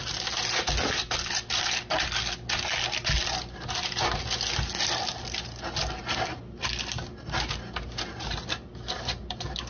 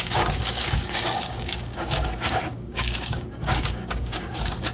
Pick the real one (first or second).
first